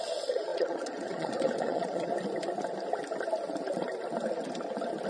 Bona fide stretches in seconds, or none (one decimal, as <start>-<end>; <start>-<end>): 2.1-5.1